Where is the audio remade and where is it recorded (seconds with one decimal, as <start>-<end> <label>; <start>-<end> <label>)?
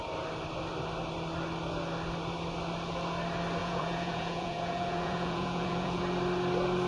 0.0-3.6 recorded; 3.6-6.0 remade; 6.0-6.9 recorded